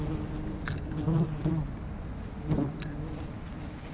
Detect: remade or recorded recorded